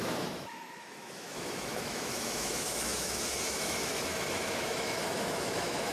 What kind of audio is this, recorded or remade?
remade